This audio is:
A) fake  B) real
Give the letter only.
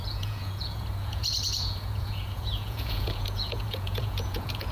A